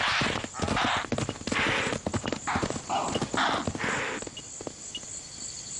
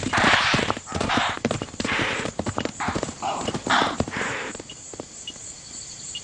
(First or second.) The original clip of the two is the first